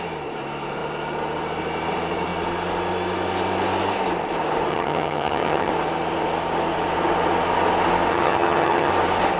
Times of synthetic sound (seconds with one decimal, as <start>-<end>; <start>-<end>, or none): 4.7-5.7; 8.1-8.9